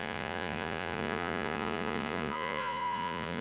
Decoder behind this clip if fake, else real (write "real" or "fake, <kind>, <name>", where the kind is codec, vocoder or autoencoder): fake, vocoder, Vocos